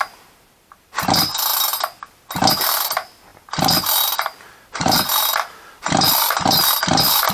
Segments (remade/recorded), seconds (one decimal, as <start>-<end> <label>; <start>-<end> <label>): 0.0-1.5 remade; 1.5-2.5 recorded; 2.5-7.3 remade